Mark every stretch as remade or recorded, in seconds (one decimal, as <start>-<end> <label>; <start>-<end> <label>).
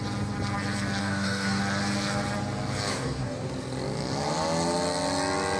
0.0-1.0 recorded; 1.0-1.6 remade; 1.6-2.9 recorded; 2.9-3.5 remade; 3.5-5.6 recorded